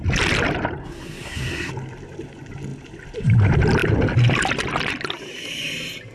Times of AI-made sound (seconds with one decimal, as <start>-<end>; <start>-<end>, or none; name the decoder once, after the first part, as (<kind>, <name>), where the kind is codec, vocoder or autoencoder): 0.8-1.7 (codec, SNAC)